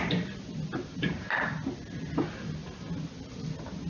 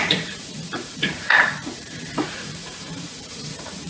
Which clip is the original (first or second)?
first